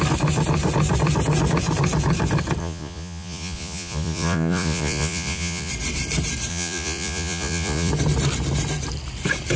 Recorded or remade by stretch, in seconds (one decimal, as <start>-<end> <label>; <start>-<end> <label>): 0.0-2.6 recorded; 2.6-5.7 remade; 5.7-6.5 recorded; 6.5-7.9 remade; 7.9-9.6 recorded